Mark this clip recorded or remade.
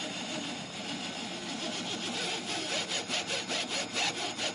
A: recorded